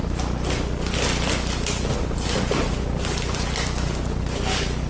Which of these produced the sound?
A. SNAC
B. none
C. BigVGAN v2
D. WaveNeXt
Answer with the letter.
B